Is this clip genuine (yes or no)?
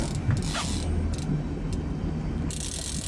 yes